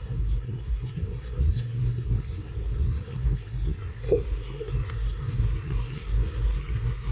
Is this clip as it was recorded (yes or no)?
no